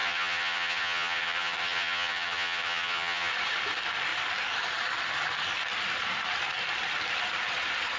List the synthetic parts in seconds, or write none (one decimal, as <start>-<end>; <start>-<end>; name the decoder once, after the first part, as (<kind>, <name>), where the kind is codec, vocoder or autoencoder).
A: 0.0-3.3 (vocoder, HiFi-GAN)